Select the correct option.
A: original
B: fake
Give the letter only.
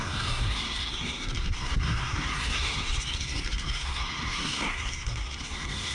B